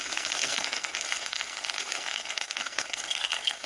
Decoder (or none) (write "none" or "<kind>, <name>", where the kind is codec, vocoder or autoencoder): codec, SNAC